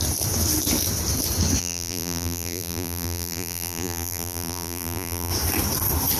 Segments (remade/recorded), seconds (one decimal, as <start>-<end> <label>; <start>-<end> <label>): 0.0-1.6 recorded; 1.6-5.3 remade; 5.3-6.2 recorded